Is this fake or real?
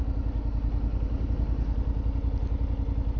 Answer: real